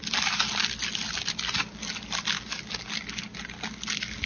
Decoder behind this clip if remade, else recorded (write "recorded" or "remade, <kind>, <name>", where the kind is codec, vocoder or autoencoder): recorded